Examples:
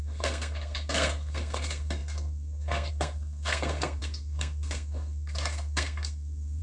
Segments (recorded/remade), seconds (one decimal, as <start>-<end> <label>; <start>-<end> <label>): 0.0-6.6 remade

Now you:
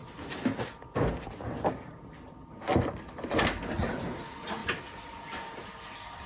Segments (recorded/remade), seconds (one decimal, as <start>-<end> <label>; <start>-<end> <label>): 0.0-3.8 recorded; 3.8-4.6 remade; 4.6-6.3 recorded

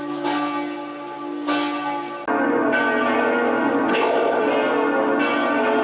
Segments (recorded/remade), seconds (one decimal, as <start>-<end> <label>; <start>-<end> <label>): 0.0-3.9 recorded; 3.9-4.4 remade; 4.4-5.8 recorded